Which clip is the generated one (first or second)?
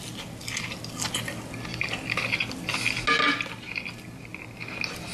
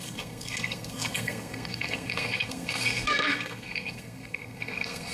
second